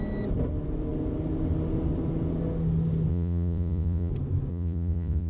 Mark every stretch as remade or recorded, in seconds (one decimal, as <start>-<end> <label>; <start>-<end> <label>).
0.0-3.1 recorded; 3.1-4.1 remade; 4.1-4.5 recorded; 4.5-5.3 remade